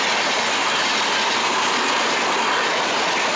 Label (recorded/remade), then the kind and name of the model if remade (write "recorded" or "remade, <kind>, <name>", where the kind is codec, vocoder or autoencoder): recorded